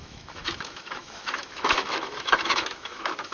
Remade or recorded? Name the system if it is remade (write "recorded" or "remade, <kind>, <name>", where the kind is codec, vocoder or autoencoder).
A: remade, autoencoder, DAC-VAE